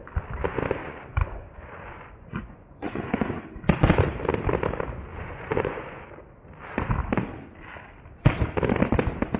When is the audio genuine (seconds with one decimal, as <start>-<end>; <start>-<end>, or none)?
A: 0.0-0.8; 3.4-5.1; 6.0-9.4